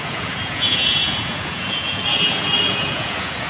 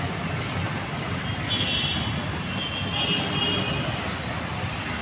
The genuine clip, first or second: second